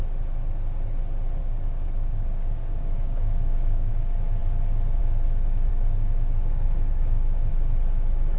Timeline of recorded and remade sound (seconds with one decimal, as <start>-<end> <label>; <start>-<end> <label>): 0.0-1.4 recorded; 1.4-3.9 remade; 3.9-5.7 recorded; 5.7-7.5 remade; 7.5-8.4 recorded